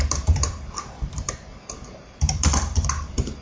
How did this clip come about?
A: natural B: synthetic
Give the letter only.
B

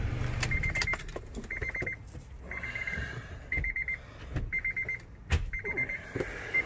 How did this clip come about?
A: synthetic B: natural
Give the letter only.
B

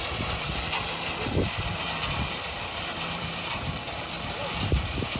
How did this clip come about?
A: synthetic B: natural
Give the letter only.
A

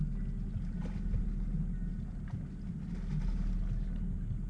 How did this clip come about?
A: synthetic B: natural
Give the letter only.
B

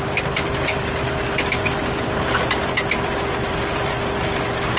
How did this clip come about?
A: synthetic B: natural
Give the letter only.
A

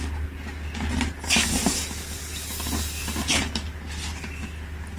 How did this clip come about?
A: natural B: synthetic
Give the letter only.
A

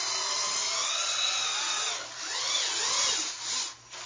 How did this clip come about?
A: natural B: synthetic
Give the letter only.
A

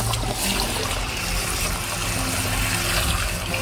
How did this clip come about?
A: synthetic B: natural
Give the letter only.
B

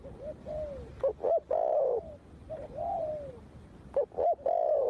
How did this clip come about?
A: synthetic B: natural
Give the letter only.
B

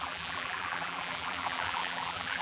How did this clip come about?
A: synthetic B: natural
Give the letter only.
A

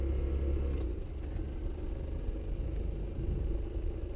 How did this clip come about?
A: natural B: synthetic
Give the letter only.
A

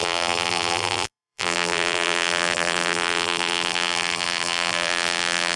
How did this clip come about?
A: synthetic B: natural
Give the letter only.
A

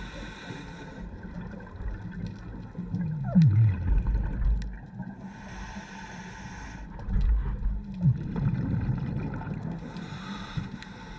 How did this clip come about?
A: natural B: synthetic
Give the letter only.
A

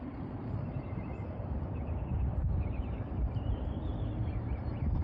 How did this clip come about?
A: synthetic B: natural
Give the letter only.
A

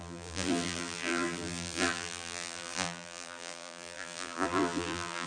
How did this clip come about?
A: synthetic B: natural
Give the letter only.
A